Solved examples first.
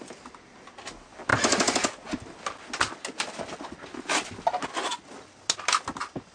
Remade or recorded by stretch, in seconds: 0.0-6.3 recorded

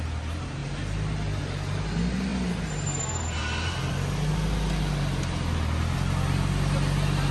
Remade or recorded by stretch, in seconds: 0.0-7.3 recorded

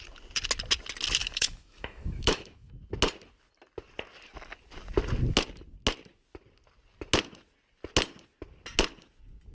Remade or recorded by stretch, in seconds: 0.0-1.2 recorded; 1.2-2.7 remade; 2.7-9.5 recorded

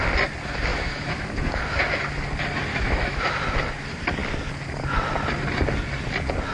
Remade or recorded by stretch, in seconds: 0.0-0.7 recorded; 0.7-1.5 remade; 1.5-2.7 recorded; 2.7-3.2 remade; 3.2-6.5 recorded

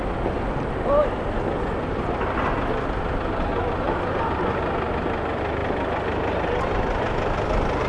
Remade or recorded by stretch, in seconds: 0.0-7.9 recorded

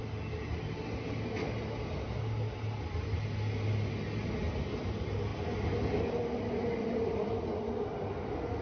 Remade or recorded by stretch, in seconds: 0.0-8.6 recorded

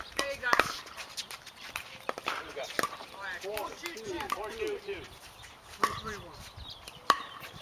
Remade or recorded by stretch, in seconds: 0.0-5.4 remade; 5.4-6.7 recorded; 6.7-7.6 remade

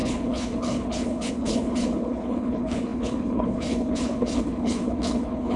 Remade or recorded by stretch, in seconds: 0.0-5.6 remade